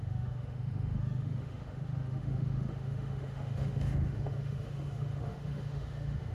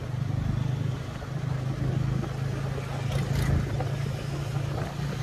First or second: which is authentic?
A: second